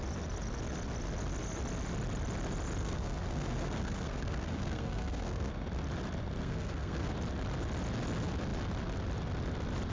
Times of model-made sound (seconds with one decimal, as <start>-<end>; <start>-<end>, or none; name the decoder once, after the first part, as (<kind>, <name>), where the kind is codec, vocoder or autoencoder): 2.8-5.5 (codec, SNAC); 6.4-7.1